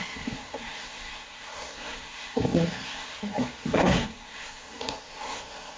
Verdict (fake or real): fake